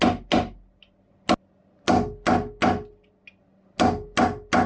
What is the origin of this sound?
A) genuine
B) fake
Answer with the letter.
A